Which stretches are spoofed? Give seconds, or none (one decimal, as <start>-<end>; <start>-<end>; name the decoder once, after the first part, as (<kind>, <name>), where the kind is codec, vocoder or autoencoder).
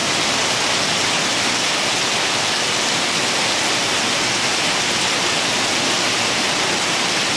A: none